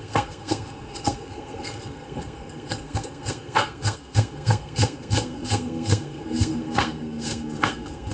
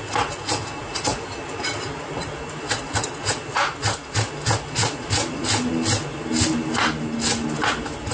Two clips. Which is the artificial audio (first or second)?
first